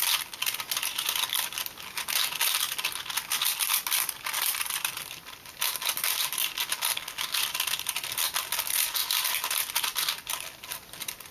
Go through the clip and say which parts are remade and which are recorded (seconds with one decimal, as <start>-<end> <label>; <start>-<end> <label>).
0.0-11.3 recorded